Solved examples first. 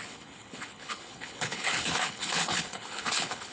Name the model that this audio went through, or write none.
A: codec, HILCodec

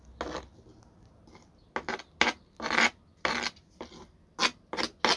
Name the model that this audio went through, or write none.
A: none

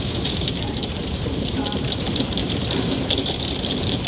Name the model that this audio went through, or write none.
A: vocoder, BigVGAN v2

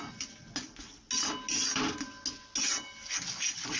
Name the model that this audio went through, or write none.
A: none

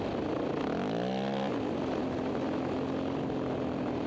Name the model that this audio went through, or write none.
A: none